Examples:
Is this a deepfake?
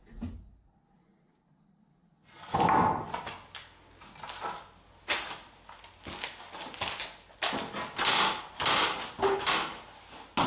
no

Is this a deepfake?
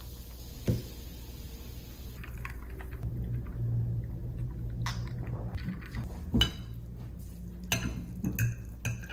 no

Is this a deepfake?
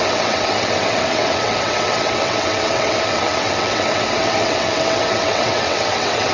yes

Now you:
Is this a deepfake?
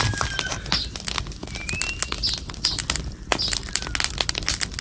no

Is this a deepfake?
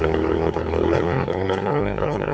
yes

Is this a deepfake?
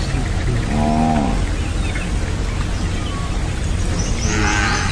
no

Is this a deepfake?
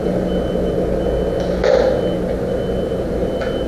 no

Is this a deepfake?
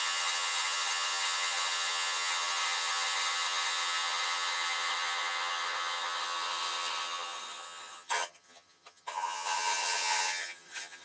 yes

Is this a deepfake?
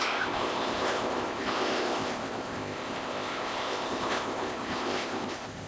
yes